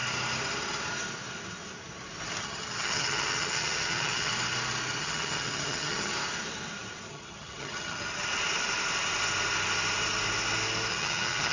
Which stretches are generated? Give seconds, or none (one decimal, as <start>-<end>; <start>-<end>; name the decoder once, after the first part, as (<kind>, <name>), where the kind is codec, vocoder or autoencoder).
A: 2.4-4.3 (vocoder, HiFi-GAN); 5.0-6.1; 7.1-8.0; 10.9-11.5